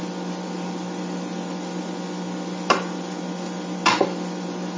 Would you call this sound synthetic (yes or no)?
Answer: no